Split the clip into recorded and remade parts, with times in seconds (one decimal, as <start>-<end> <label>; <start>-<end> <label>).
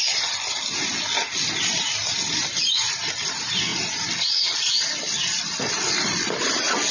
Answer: 0.0-6.9 recorded